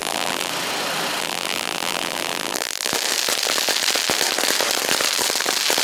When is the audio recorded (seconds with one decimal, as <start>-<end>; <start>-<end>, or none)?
0.5-1.2; 2.9-5.8